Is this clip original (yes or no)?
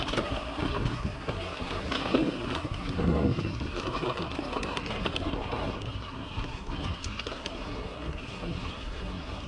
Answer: no